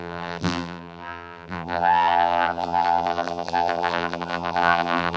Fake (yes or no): yes